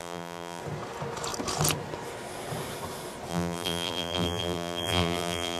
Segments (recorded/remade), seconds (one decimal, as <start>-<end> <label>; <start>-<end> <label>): 0.0-0.6 remade; 0.6-3.3 recorded; 3.3-5.6 remade